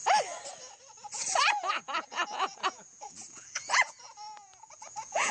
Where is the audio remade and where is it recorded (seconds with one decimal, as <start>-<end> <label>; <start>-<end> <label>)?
0.0-1.0 recorded; 1.0-5.3 remade